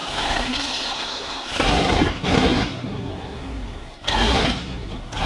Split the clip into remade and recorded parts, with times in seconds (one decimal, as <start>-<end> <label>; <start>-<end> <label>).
0.0-5.3 remade